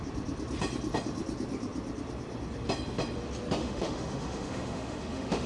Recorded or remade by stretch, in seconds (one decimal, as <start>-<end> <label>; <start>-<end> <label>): 0.0-3.6 recorded; 3.6-5.5 remade